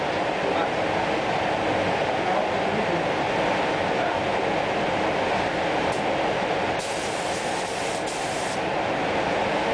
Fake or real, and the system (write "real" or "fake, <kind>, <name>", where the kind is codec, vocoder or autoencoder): real